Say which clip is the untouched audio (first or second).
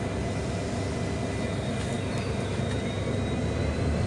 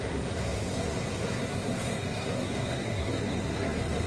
first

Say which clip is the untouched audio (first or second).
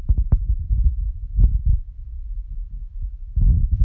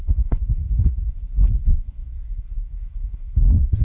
first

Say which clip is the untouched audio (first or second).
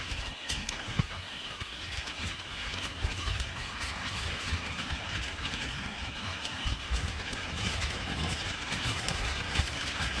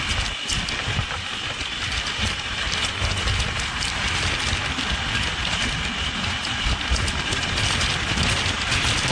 second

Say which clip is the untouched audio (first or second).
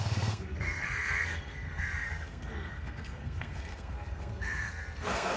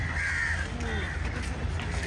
second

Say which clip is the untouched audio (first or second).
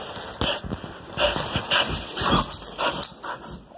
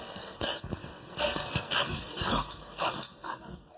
first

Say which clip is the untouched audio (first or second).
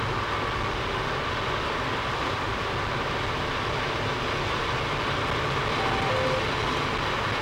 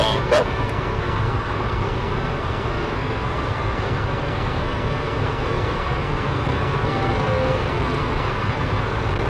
first